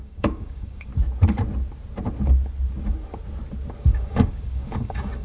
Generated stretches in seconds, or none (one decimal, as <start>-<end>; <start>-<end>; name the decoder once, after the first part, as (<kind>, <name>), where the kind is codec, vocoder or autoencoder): 0.0-0.9 (codec, DAC); 3.8-5.2